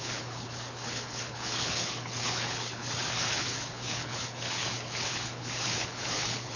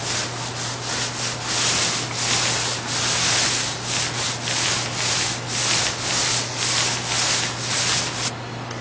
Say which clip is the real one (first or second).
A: second